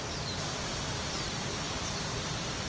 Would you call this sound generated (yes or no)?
no